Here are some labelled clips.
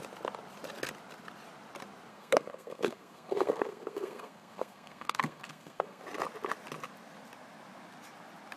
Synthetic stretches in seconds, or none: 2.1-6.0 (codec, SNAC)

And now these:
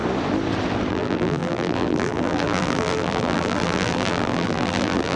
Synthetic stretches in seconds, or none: 0.9-5.2 (vocoder, BigVGAN v2)

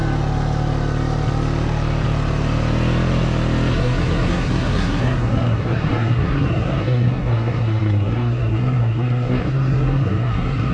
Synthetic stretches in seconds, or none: 3.7-10.7 (codec, SNAC)